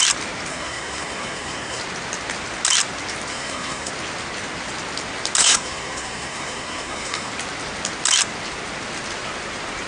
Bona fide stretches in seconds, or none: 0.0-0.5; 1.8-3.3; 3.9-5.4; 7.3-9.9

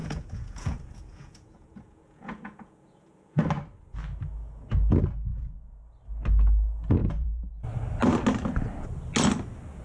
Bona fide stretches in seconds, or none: 3.4-5.3; 5.9-7.0; 7.5-9.8

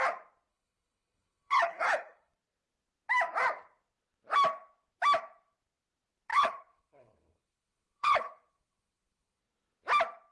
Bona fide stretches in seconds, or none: 0.0-0.5; 2.3-6.3; 9.4-10.3